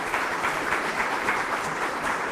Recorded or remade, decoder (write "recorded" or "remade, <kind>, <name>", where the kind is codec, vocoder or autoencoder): remade, vocoder, BigVGAN v2